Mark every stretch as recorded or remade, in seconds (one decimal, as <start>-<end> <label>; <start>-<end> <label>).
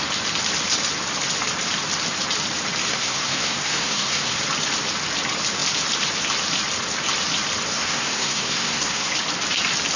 0.0-2.9 recorded; 2.9-4.4 remade; 4.4-7.7 recorded; 7.7-9.1 remade; 9.1-10.0 recorded